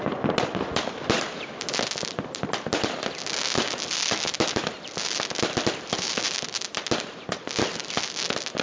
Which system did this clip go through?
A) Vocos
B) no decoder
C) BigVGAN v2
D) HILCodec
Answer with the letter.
B